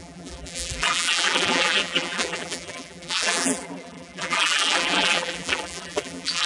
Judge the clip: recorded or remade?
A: remade